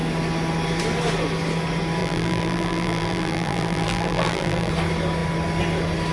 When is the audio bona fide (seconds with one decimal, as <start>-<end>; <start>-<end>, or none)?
0.0-2.0; 4.7-6.1